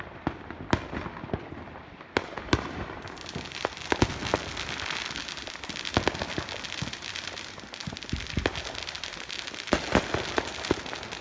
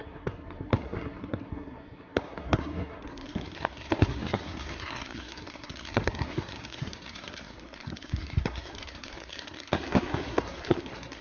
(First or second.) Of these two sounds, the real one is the first